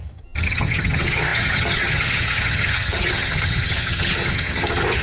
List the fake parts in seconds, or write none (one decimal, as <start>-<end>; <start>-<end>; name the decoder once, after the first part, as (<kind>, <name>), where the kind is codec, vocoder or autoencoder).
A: 0.0-5.0 (vocoder, HiFi-GAN)